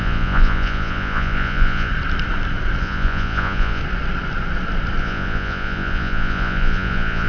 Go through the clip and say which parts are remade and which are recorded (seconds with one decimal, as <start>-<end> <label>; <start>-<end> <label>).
0.0-1.9 remade; 1.9-2.8 recorded; 2.8-3.8 remade; 3.8-5.0 recorded; 5.0-7.3 remade